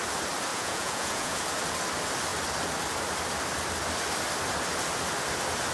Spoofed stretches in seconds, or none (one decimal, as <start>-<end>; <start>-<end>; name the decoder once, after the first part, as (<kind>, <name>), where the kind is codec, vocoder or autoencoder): 0.5-1.4 (vocoder, Vocos)